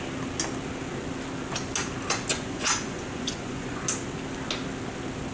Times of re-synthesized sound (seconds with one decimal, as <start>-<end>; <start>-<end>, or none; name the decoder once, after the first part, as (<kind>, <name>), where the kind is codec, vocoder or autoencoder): 2.3-3.8 (vocoder, Vocos)